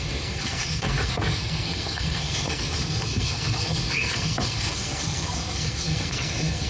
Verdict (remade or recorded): remade